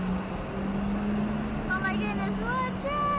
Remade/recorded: recorded